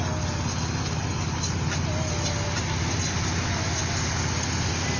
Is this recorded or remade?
recorded